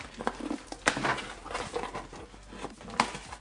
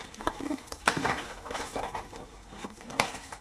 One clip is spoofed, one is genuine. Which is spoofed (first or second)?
second